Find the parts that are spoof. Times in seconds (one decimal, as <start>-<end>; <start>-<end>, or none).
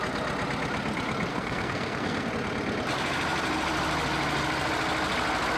1.3-2.3